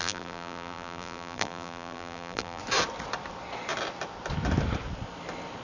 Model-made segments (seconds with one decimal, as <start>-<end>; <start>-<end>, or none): 0.0-2.6